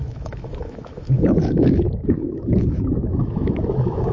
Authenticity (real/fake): fake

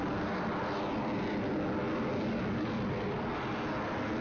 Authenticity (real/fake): real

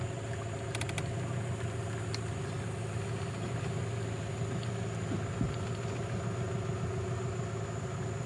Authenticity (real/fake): real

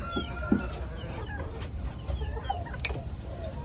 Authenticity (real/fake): fake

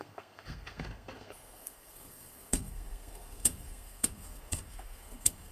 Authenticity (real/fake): fake